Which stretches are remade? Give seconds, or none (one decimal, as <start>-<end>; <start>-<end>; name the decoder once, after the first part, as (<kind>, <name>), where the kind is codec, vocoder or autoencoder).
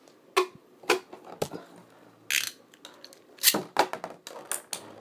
0.6-1.3 (vocoder, BigVGAN v2)